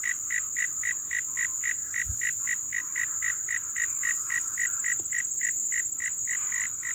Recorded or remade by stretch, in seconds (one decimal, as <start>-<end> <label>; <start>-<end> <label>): 0.0-1.8 remade; 1.8-2.8 recorded; 2.8-5.6 remade; 5.6-6.5 recorded; 6.5-6.9 remade